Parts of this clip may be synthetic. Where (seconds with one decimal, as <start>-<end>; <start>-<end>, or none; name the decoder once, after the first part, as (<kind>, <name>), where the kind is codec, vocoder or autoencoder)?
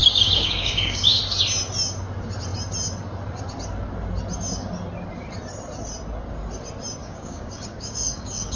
0.0-1.2 (codec, DAC); 7.0-8.6